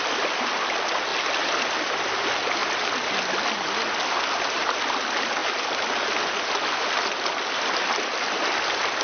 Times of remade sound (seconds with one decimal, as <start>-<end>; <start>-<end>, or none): none